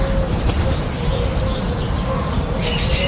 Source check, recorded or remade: recorded